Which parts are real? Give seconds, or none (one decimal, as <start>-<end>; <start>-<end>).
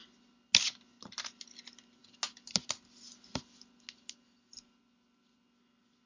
0.0-6.1